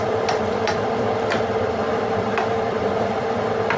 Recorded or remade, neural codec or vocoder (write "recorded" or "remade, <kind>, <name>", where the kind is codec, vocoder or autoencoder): remade, vocoder, BigVGAN v2